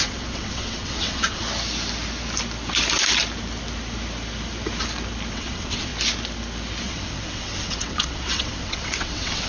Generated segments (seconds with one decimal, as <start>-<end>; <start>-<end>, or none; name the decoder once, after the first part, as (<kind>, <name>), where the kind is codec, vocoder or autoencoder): 0.0-1.4 (vocoder, WaveNeXt); 5.3-5.9; 6.8-9.5